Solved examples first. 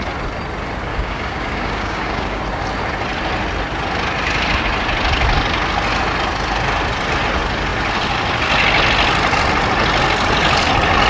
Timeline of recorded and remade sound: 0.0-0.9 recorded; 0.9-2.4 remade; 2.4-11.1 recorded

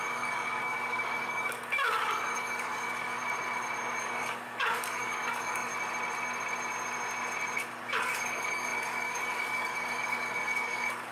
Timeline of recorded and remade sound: 0.0-3.2 remade; 3.2-4.0 recorded; 4.0-5.7 remade; 5.7-7.8 recorded; 7.8-11.1 remade

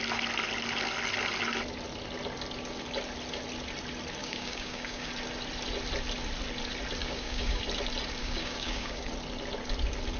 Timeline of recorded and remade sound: 0.0-4.2 recorded; 4.2-5.1 remade; 5.1-7.0 recorded; 7.0-7.6 remade; 7.6-8.2 recorded; 8.2-9.1 remade; 9.1-10.2 recorded

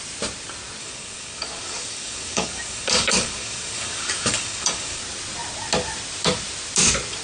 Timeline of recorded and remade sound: 0.0-0.8 recorded; 0.8-5.0 remade; 5.0-7.2 recorded

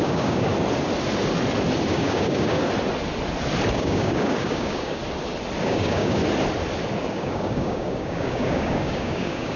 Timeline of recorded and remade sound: 0.0-0.5 remade; 0.5-1.9 recorded; 1.9-2.6 remade; 2.6-3.7 recorded; 3.7-5.0 remade; 5.0-5.6 recorded; 5.6-6.2 remade; 6.2-7.1 recorded; 7.1-9.6 remade